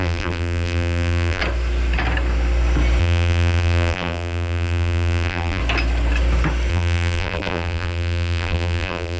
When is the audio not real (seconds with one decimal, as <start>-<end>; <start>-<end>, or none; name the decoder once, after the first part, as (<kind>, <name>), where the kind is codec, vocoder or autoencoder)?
0.0-1.4 (vocoder, BigVGAN v2); 3.0-5.6; 6.7-9.2